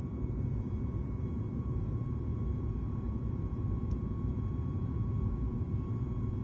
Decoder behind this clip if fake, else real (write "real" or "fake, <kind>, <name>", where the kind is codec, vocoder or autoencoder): fake, vocoder, BigVGAN v2